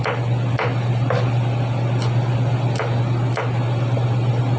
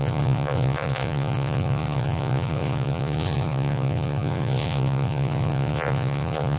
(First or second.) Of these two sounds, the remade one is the second